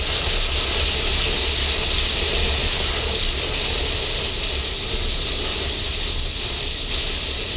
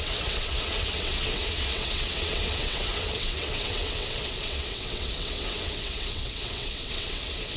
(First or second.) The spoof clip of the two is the second